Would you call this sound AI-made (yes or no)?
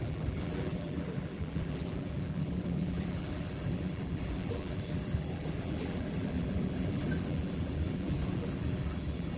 yes